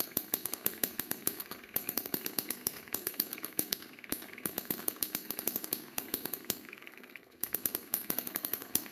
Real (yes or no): no